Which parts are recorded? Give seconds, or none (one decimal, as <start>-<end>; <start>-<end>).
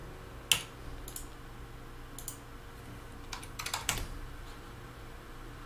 0.0-3.4